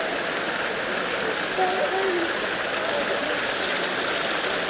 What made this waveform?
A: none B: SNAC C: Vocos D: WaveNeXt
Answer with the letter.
A